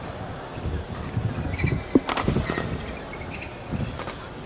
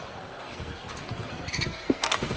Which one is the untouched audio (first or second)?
first